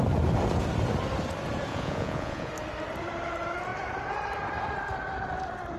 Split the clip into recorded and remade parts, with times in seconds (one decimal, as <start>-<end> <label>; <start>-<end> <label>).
0.0-1.7 recorded; 1.7-2.5 remade; 2.5-5.8 recorded

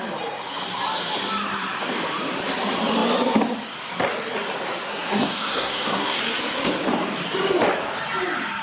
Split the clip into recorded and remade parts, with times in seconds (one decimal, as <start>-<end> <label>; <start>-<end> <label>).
0.0-4.9 recorded; 4.9-6.2 remade; 6.2-8.6 recorded

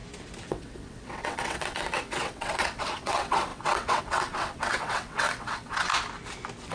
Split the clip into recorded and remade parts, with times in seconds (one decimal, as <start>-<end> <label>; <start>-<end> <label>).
0.0-0.5 recorded; 0.5-5.9 remade; 5.9-6.7 recorded

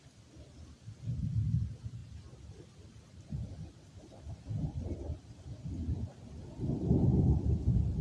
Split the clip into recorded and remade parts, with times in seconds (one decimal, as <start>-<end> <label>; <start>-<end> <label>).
0.0-8.0 recorded

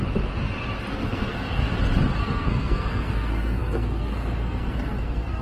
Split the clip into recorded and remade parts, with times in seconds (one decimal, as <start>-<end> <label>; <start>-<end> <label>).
0.0-0.9 recorded; 0.9-1.7 remade; 1.7-2.2 recorded; 2.2-5.4 remade

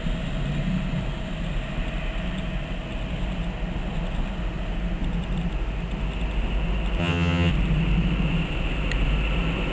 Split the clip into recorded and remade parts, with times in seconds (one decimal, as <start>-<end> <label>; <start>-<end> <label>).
0.0-7.0 recorded; 7.0-7.5 remade; 7.5-9.7 recorded